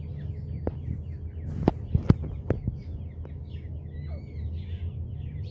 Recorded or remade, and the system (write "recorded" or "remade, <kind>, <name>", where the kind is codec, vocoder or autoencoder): recorded